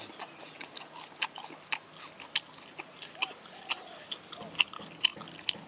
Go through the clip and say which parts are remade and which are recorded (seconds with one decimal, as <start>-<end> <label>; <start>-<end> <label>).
0.0-5.7 recorded